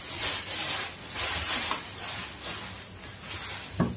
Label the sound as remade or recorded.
recorded